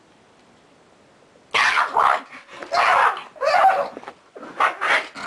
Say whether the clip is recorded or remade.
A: recorded